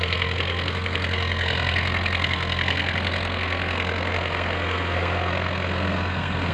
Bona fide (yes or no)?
no